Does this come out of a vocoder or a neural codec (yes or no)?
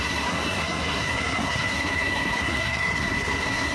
yes